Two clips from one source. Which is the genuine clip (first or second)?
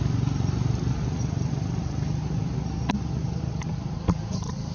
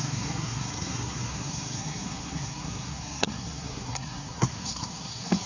first